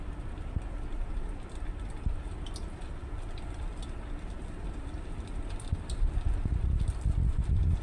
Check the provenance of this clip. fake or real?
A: fake